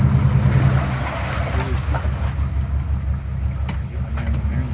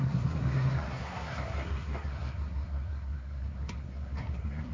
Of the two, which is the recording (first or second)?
first